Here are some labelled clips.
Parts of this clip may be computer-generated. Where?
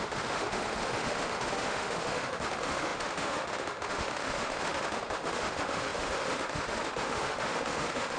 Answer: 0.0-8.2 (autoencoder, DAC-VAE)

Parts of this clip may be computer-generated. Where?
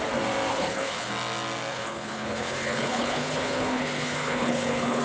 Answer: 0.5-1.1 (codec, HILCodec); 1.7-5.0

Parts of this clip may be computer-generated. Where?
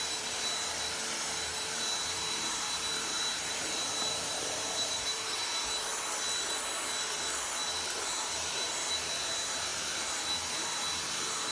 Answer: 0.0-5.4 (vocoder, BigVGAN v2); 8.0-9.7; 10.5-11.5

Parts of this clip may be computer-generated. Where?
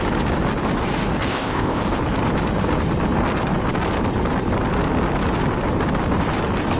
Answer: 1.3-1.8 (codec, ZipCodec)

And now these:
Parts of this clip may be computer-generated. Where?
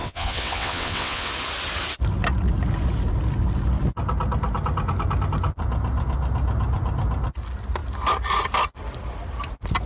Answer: 0.0-1.3 (vocoder, WaveNeXt)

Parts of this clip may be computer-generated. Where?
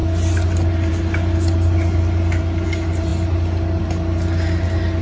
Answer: none